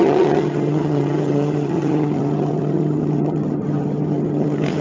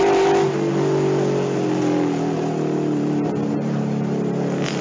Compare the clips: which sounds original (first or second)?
second